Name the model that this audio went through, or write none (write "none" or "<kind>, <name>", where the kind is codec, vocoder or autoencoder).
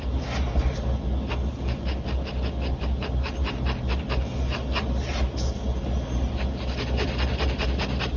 none